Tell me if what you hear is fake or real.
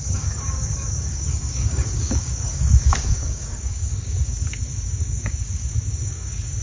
fake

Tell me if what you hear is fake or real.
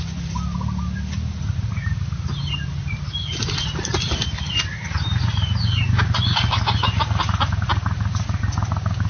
real